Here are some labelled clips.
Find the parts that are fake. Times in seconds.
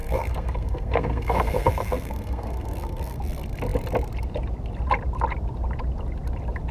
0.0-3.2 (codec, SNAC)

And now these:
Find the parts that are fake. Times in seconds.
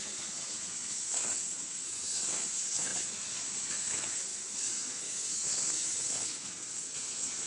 0.0-7.5 (codec, SNAC)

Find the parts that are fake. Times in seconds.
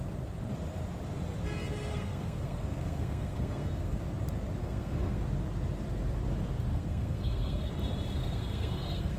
1.9-4.0 (codec, SNAC); 4.6-5.2; 6.7-7.7; 8.2-9.2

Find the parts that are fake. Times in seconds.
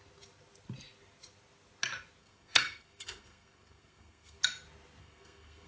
2.2-4.4 (codec, SNAC); 5.0-5.7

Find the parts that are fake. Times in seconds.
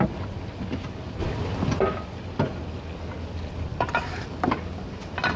none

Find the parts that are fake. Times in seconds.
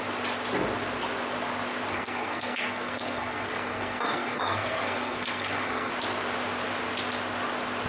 1.9-5.9 (codec, SNAC)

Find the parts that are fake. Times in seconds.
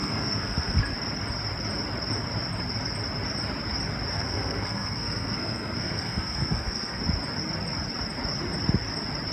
0.0-0.8 (codec, SNAC); 4.1-7.0